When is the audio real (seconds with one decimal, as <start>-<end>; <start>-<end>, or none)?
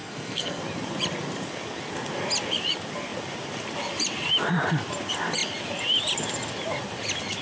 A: 0.6-7.4